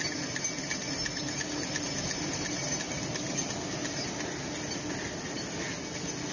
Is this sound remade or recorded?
recorded